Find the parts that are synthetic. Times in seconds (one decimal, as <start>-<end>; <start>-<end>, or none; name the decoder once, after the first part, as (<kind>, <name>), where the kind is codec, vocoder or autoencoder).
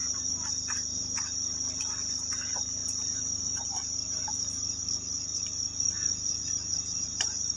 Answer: none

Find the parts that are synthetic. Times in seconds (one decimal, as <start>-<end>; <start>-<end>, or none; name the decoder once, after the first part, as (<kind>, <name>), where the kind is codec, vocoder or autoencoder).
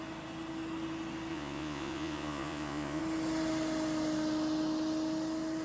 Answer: 1.3-3.0 (vocoder, Vocos)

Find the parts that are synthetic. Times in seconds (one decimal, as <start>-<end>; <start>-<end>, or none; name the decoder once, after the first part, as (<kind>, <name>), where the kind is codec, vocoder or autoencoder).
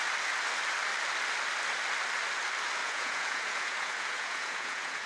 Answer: 2.8-5.1 (vocoder, Vocos)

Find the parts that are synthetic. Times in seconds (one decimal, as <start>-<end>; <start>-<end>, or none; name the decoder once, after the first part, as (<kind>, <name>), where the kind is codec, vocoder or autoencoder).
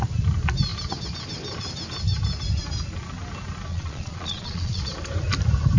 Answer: 3.7-4.8 (vocoder, Vocos)